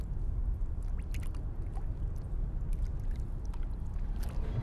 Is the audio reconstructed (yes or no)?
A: no